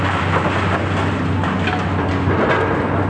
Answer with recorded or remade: recorded